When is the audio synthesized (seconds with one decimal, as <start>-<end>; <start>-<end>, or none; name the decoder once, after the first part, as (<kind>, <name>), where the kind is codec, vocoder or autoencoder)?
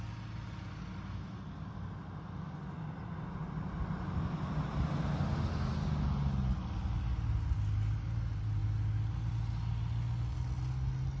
none